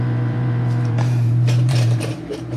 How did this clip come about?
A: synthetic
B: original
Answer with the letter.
A